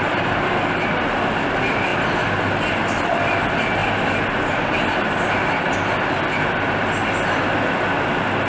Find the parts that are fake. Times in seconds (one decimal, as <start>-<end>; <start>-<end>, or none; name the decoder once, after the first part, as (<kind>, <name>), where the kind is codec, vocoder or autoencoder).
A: none